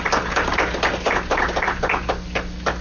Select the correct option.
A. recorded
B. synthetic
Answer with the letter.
A